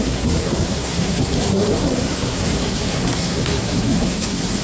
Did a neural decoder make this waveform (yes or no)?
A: yes